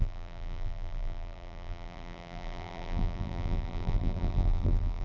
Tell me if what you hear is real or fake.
fake